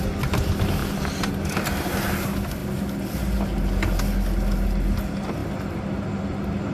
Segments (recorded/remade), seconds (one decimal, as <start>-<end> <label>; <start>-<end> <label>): 0.0-6.7 recorded